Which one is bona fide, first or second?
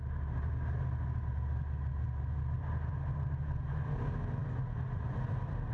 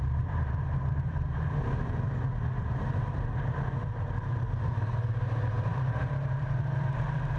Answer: first